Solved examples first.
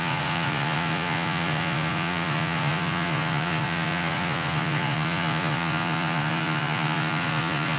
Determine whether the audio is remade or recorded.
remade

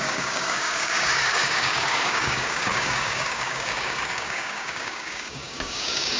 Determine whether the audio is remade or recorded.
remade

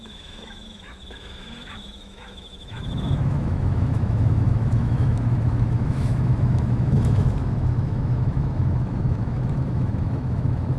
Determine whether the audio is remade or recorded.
remade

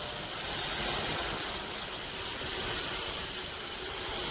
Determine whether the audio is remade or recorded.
recorded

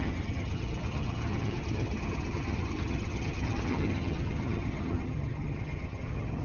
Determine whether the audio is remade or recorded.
remade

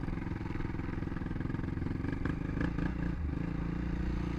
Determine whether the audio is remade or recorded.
recorded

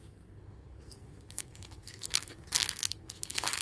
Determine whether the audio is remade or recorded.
remade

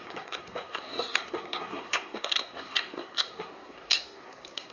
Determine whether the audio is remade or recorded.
remade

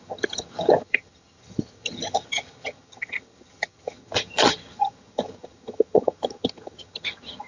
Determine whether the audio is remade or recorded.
remade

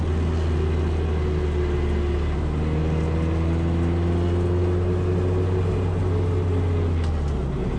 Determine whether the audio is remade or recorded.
recorded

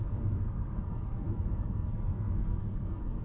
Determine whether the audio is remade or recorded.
remade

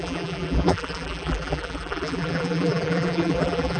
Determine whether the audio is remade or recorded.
remade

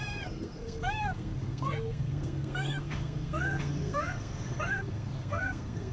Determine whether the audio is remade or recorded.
remade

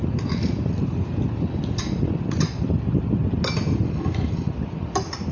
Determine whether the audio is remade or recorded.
recorded